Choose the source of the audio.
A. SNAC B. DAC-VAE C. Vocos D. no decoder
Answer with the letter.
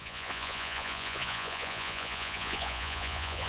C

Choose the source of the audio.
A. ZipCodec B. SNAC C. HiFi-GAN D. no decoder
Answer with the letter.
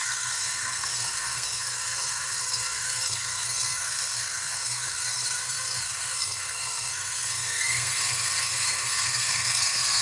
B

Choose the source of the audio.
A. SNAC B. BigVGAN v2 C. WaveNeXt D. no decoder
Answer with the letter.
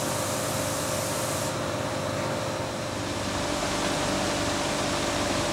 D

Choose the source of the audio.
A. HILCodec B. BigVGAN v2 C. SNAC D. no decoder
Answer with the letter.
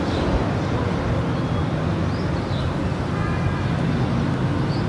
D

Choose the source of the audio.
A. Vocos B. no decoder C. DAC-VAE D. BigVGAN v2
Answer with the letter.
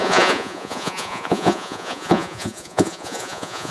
A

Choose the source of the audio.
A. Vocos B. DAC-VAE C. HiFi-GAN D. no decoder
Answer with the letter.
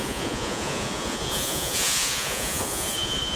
A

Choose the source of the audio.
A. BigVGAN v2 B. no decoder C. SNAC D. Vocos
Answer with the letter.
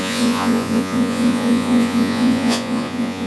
D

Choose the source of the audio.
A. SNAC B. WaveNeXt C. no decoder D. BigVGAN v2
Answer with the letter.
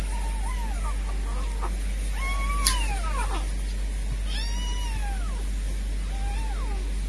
C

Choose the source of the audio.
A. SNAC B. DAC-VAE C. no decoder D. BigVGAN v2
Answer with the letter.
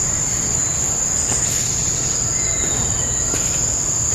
C